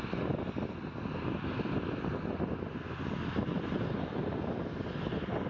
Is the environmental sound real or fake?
real